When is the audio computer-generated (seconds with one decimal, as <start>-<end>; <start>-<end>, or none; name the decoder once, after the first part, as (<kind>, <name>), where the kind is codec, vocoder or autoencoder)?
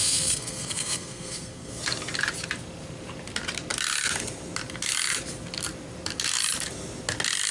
0.0-1.8 (codec, SNAC)